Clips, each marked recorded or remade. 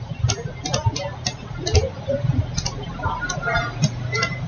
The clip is recorded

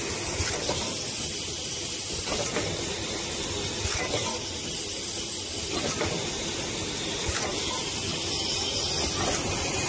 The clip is recorded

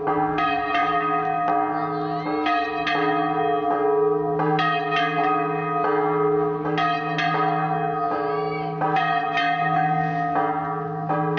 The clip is recorded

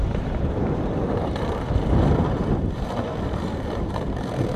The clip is remade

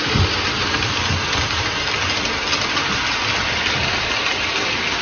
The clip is recorded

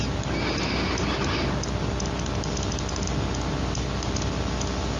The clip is recorded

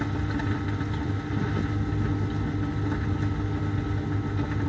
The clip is recorded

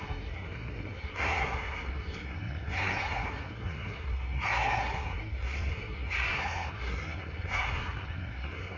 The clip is remade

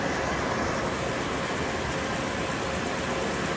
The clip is recorded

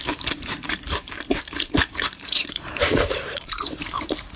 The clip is remade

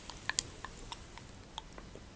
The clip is recorded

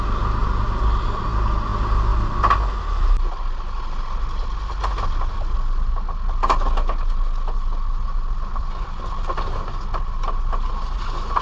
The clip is recorded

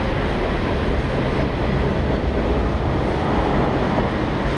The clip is recorded